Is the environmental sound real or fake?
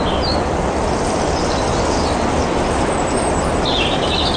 real